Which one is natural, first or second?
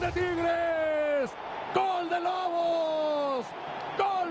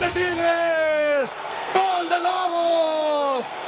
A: first